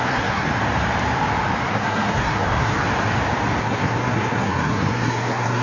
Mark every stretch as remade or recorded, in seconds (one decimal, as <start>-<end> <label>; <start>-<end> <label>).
0.0-0.5 remade; 0.5-1.7 recorded; 1.7-2.8 remade; 2.8-3.6 recorded; 3.6-5.6 remade